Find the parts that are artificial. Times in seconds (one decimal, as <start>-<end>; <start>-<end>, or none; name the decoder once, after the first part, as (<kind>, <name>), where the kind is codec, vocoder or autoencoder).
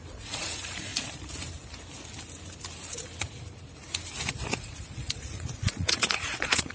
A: 0.0-0.9 (vocoder, Vocos); 4.5-6.7